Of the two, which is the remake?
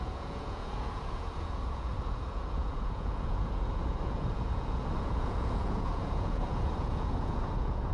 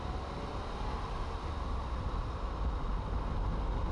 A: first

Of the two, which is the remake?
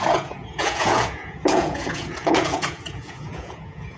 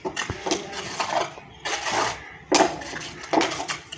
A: first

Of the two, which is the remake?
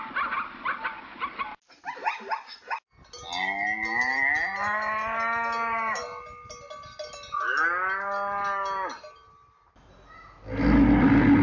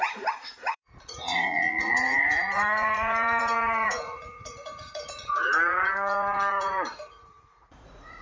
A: second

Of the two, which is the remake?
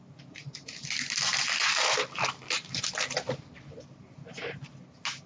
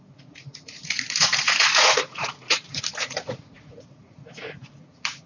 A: second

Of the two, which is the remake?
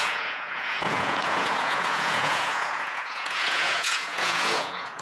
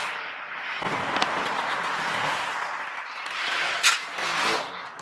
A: first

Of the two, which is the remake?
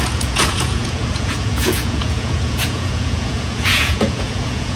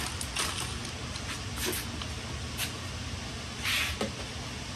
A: first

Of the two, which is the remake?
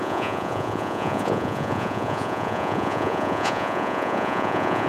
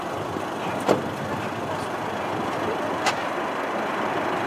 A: first